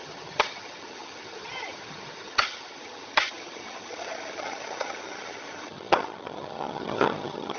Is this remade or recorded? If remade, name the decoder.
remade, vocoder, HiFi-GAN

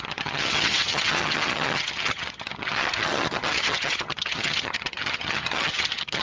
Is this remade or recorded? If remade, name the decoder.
remade, vocoder, HiFi-GAN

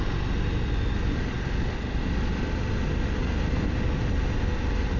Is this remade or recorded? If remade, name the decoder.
recorded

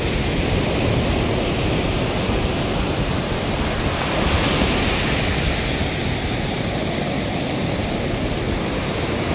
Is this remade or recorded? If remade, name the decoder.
recorded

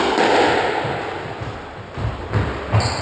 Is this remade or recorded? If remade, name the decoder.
recorded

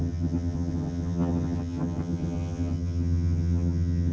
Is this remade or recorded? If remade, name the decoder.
remade, vocoder, HiFi-GAN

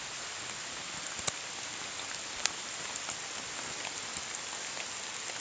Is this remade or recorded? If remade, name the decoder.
recorded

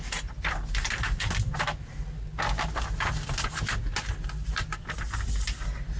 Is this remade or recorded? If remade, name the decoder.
recorded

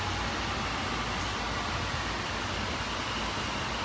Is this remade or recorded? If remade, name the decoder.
recorded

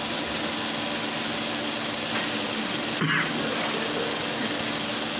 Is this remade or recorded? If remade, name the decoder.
recorded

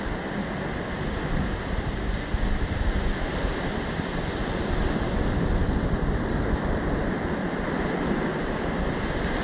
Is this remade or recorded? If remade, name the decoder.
recorded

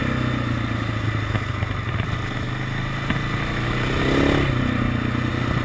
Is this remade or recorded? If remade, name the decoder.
recorded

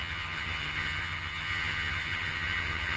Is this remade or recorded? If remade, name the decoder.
remade, vocoder, HiFi-GAN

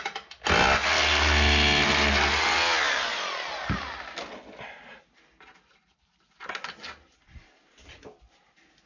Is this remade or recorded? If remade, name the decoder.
recorded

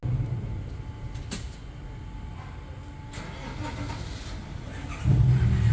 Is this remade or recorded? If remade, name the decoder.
recorded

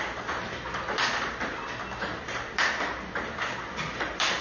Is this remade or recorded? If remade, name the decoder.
recorded